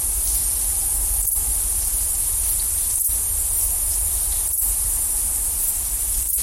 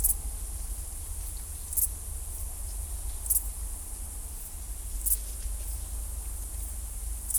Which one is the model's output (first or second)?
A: first